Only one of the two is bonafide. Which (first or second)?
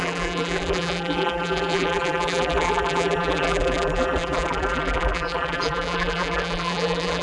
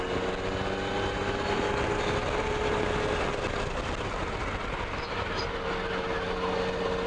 second